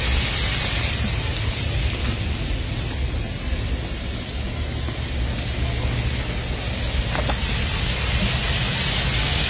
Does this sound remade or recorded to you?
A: recorded